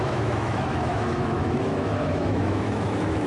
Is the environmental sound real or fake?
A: fake